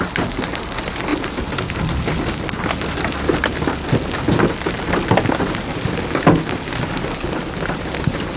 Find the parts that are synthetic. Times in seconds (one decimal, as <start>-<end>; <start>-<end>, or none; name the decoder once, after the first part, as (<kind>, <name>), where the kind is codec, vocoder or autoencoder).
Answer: none